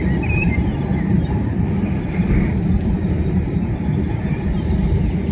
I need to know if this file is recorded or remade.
remade